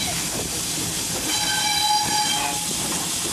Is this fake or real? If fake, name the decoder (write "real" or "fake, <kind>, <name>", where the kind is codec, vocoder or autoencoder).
real